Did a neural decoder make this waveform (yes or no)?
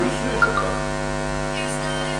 no